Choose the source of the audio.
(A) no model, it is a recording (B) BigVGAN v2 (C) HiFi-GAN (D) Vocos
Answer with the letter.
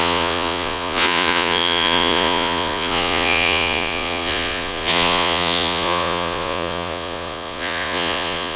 D